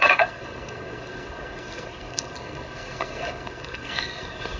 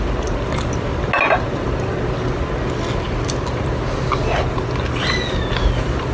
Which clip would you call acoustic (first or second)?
second